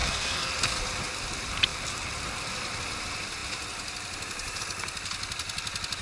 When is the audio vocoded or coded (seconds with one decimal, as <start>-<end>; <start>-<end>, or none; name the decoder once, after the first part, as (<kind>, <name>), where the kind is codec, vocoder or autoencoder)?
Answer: 0.0-0.5 (codec, SNAC)